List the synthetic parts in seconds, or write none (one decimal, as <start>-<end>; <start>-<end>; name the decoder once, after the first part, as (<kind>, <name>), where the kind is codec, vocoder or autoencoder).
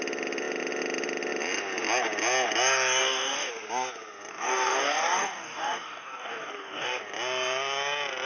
3.0-3.5 (codec, DAC); 4.3-7.0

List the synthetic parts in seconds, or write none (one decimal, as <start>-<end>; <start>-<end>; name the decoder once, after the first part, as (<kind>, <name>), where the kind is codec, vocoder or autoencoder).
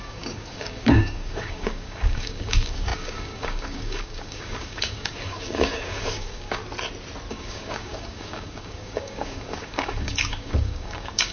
0.0-6.6 (codec, DAC); 7.3-11.3